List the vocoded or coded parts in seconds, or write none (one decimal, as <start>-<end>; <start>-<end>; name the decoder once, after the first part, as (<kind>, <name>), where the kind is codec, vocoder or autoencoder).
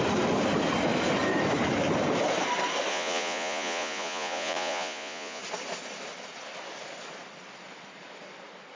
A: 2.9-5.4 (vocoder, Vocos)